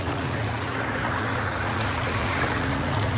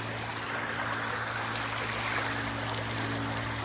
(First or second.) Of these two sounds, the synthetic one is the first